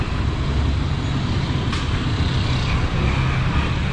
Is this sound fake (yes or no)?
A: no